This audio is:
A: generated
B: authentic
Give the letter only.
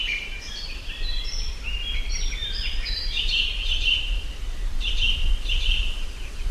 A